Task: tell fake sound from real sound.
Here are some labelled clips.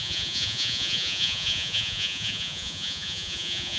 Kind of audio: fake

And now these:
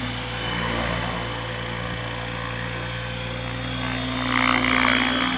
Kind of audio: real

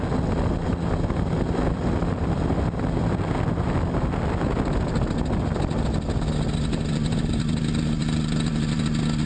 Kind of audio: real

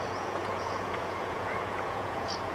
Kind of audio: fake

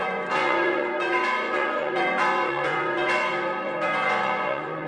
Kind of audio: fake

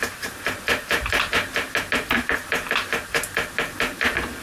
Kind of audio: real